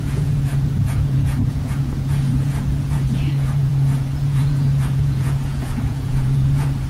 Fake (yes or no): yes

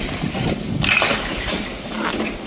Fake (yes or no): no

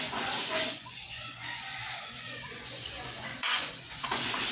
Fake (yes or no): yes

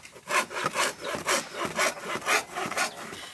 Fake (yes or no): no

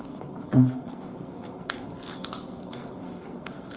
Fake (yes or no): yes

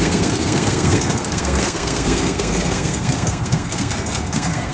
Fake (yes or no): yes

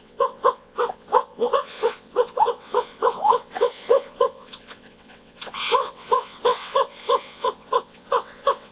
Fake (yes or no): yes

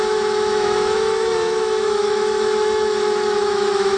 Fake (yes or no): yes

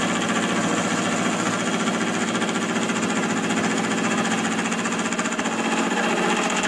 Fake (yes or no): no